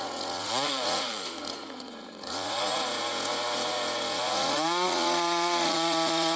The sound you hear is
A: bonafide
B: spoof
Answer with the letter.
B